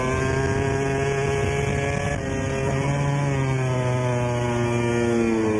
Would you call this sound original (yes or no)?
yes